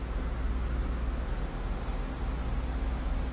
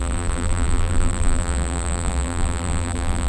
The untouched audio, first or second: first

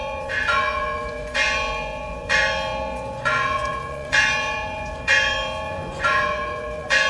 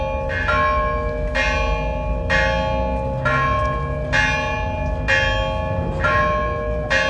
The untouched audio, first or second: second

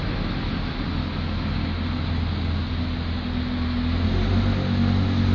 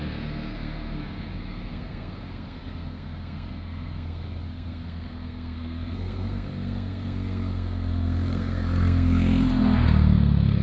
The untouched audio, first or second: first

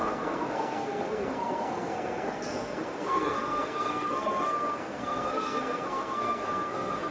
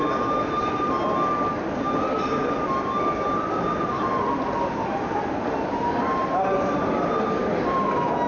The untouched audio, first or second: second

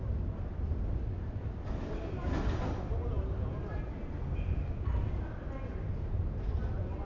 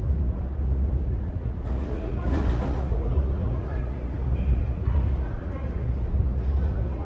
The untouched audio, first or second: first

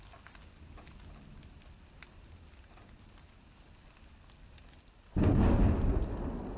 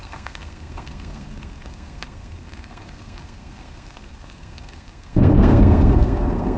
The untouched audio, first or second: first